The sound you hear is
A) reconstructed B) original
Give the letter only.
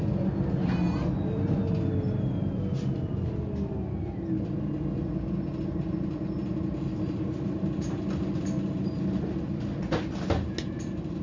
B